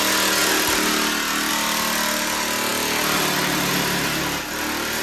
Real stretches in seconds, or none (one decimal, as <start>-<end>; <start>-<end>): 0.0-5.0

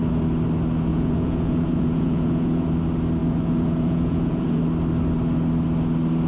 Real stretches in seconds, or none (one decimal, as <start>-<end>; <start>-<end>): 0.0-0.9; 2.7-3.2; 4.6-6.3

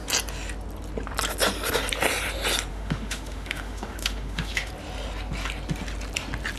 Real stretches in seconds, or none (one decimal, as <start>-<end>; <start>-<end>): 0.0-2.7; 4.7-6.6

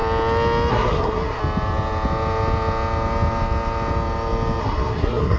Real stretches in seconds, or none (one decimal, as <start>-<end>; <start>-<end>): 0.0-0.7; 1.4-4.6

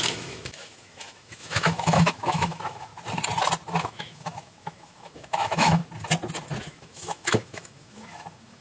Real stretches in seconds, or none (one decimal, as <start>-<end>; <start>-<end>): 2.9-3.8; 5.8-6.6

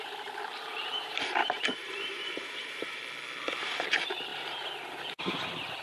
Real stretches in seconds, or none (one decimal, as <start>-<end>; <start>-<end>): 3.0-3.6; 4.3-5.8